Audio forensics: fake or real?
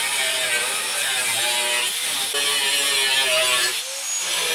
real